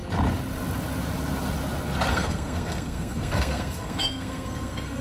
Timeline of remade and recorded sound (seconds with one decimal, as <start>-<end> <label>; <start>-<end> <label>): 0.0-2.1 recorded; 2.1-5.0 remade